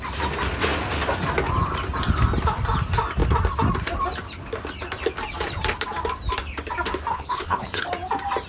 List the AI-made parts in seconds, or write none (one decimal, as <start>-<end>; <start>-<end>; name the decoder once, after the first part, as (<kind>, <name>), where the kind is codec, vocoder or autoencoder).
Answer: 7.1-7.9 (codec, HILCodec)